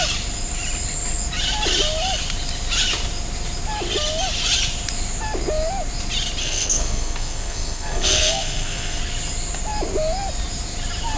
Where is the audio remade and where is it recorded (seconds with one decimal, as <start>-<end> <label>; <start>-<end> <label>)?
0.0-6.4 recorded; 6.4-9.0 remade; 9.0-11.2 recorded